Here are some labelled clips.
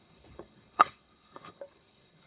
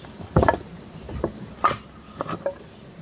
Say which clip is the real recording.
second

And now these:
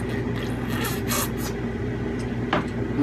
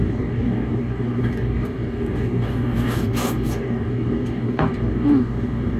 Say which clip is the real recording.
first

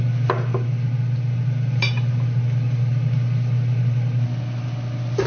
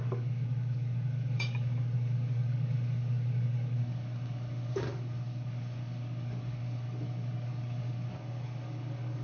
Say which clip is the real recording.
first